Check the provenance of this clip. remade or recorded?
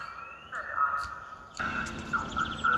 recorded